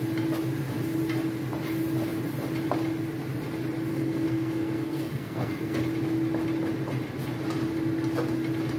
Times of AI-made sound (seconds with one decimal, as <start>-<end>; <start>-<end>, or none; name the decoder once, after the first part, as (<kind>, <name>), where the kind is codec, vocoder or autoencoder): 3.9-5.8 (codec, SNAC)